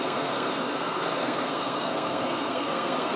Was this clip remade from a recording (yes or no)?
yes